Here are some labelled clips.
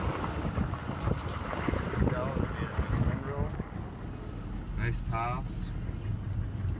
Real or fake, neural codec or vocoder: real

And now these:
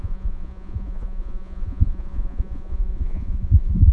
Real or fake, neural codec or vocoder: fake, vocoder, Vocos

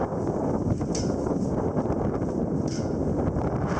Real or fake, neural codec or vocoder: real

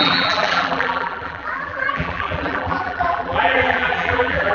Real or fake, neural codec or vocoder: fake, vocoder, BigVGAN v2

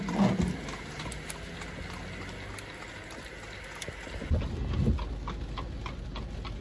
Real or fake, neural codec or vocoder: real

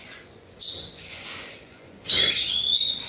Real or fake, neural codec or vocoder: fake, vocoder, Vocos